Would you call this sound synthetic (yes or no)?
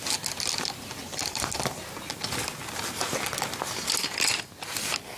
no